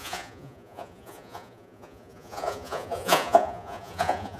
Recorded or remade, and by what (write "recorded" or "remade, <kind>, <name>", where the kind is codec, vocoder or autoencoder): remade, vocoder, Vocos